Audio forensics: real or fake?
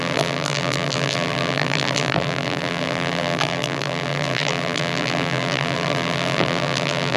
fake